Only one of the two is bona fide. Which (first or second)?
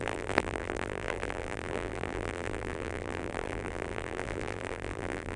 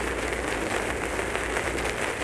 second